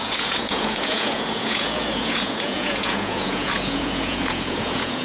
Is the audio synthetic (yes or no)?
yes